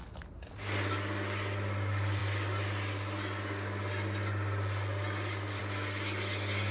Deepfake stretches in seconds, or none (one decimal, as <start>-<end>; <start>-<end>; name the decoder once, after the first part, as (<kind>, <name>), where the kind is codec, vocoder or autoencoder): none